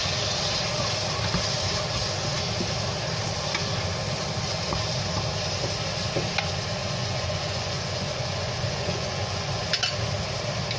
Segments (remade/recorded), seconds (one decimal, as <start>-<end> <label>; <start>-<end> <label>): 0.0-6.8 recorded; 6.8-9.6 remade; 9.6-10.8 recorded